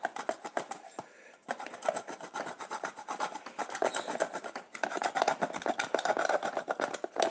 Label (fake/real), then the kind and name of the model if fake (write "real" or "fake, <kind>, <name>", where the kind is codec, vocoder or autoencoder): real